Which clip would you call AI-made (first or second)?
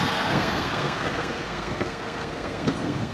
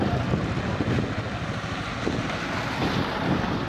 first